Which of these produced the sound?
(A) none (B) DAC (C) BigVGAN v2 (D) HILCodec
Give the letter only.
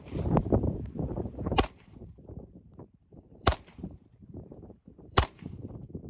C